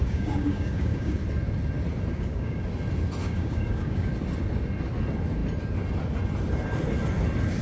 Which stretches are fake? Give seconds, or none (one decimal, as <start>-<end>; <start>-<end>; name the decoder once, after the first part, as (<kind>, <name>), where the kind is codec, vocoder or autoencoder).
0.0-1.2 (codec, DAC); 2.1-2.6; 3.2-4.1